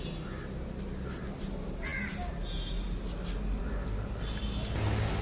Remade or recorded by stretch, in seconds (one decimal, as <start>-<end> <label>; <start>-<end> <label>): 0.0-5.2 recorded